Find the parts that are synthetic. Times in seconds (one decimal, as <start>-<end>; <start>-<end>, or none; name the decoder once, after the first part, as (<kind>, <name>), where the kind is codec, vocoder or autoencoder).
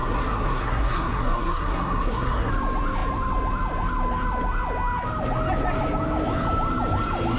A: 0.0-2.5 (codec, SNAC)